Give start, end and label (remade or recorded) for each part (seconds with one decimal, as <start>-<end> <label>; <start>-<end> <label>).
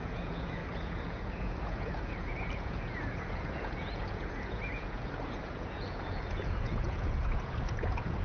0.0-8.2 remade